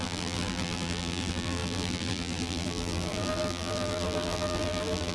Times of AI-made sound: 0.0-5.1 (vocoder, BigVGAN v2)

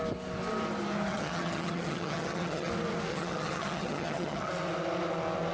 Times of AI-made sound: 1.1-2.7 (vocoder, HiFi-GAN); 3.1-4.5

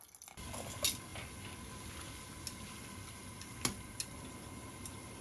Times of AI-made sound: none

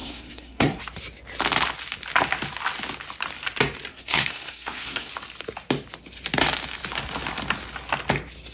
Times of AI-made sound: 0.0-0.8 (codec, SNAC); 3.9-5.1